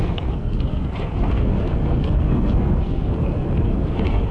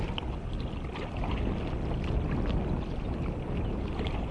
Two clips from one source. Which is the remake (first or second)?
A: first